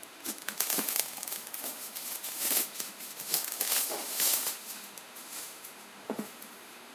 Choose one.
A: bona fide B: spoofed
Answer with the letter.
B